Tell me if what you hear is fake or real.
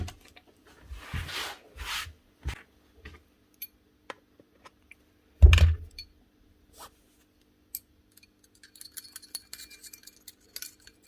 real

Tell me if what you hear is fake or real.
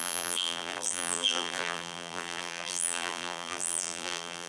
fake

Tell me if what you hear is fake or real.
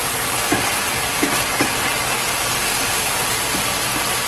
real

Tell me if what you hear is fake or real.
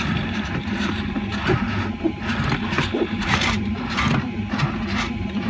fake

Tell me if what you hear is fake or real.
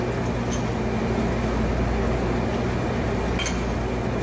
real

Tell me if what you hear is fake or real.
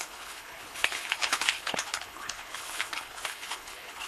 fake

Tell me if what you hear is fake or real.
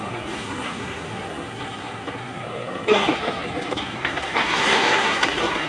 fake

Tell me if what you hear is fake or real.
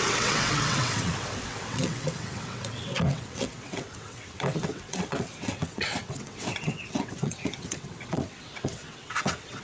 fake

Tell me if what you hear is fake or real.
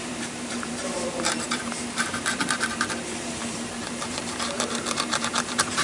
fake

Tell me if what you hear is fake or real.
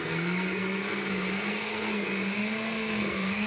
fake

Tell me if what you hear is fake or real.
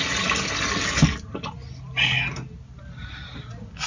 real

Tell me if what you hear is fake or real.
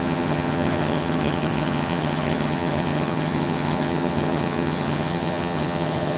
fake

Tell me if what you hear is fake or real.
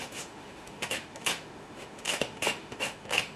fake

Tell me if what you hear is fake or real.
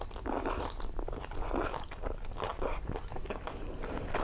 real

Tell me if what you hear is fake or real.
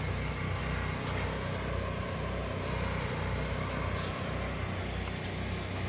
real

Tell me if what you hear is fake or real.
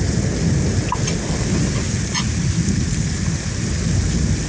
real